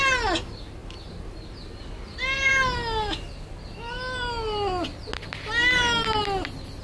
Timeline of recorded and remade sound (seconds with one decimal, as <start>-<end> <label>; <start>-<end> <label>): 0.0-6.8 recorded